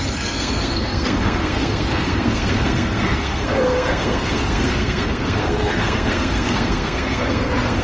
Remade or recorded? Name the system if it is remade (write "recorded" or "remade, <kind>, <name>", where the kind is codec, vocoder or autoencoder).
remade, codec, SNAC